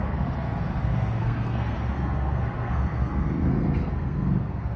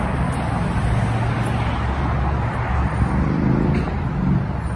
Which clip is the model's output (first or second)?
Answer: first